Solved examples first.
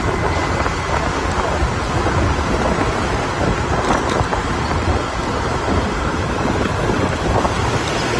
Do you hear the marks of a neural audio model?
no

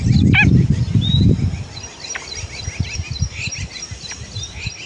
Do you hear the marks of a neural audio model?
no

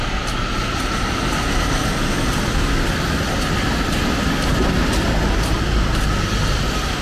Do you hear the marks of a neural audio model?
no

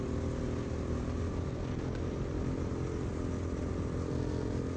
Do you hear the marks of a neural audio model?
no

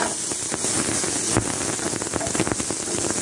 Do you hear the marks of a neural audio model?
no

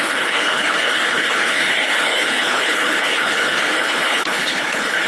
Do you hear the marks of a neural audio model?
yes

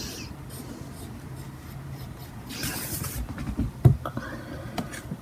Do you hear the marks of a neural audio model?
yes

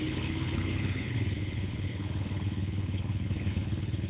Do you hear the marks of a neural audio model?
yes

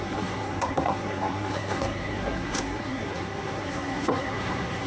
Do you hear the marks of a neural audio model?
yes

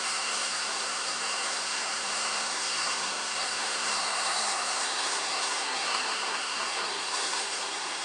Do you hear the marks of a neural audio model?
yes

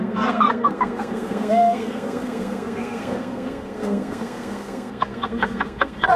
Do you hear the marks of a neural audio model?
yes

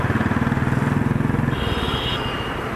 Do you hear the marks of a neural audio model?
no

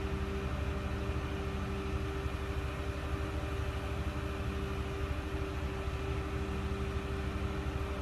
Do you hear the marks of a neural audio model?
no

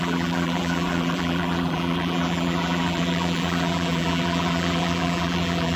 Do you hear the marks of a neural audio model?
yes